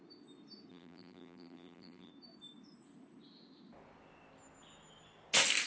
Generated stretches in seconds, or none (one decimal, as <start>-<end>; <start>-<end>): 0.7-2.1